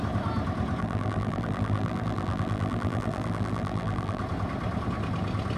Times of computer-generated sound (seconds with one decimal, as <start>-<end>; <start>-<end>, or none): 0.8-4.2